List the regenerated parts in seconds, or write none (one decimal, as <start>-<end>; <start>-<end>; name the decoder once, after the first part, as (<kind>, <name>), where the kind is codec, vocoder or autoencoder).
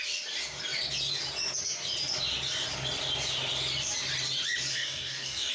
4.7-5.5 (codec, DAC)